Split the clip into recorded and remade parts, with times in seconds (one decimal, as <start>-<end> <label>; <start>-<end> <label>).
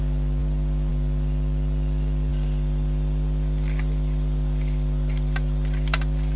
0.0-6.4 recorded